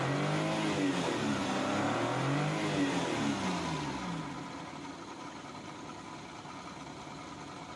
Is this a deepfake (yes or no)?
no